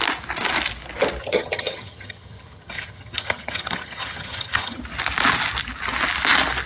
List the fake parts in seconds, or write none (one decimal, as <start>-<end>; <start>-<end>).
1.2-4.8